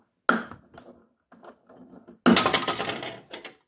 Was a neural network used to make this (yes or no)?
no